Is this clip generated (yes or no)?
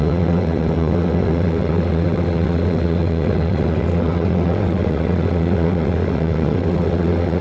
yes